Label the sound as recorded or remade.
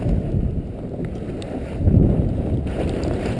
remade